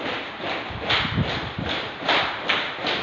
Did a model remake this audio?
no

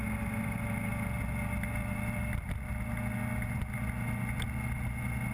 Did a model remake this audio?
no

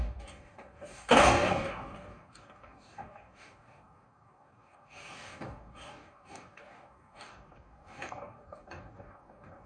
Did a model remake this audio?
yes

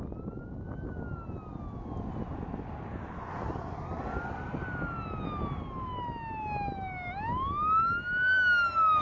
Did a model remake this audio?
no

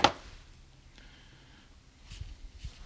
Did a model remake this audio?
no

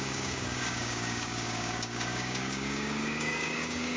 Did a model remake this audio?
yes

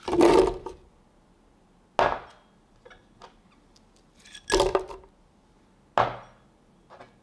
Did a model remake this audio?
no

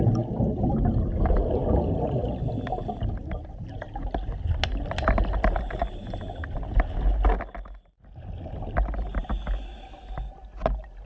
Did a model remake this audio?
no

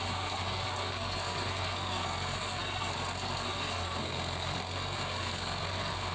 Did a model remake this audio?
yes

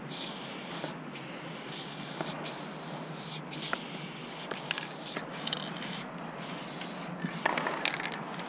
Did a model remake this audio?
no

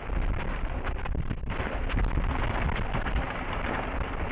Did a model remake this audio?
no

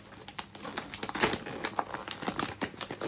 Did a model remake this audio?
no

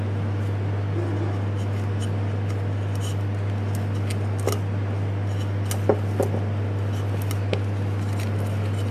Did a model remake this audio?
no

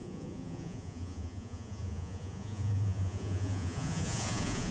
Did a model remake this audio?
yes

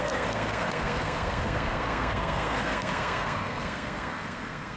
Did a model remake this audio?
yes